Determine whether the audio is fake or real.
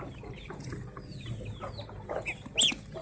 real